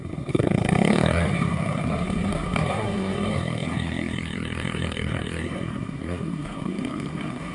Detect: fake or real fake